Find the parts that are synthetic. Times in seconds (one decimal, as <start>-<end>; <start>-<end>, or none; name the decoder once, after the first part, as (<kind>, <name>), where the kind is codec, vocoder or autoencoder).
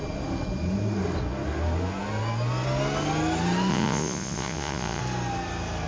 3.7-5.0 (vocoder, Vocos)